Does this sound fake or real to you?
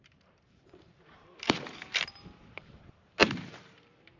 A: fake